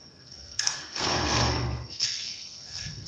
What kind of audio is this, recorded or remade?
remade